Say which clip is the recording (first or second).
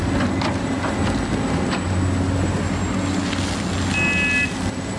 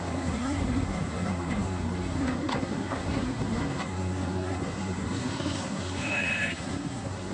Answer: first